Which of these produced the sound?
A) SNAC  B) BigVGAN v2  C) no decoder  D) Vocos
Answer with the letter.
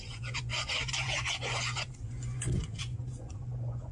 D